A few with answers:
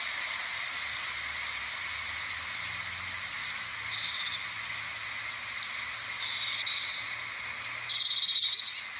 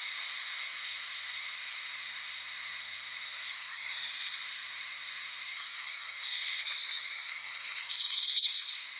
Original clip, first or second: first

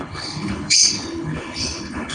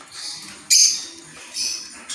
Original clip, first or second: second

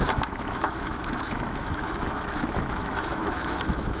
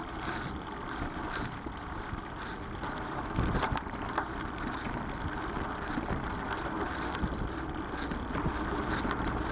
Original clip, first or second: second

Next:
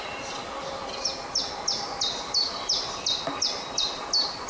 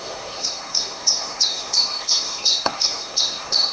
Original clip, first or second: first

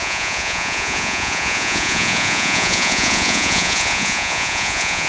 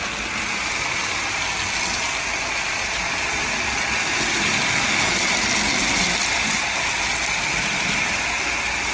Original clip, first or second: second